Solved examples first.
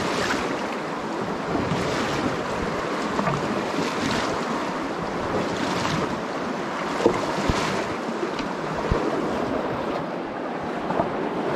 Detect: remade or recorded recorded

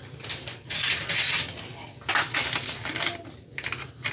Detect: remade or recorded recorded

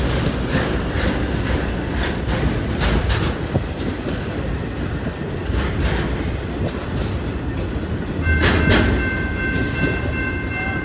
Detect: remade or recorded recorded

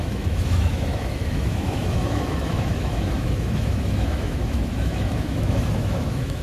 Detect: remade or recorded remade